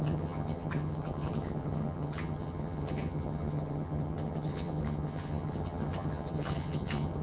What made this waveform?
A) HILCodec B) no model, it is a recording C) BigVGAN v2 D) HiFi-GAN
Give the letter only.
D